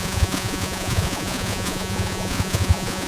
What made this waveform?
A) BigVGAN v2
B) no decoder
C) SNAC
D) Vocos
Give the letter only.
D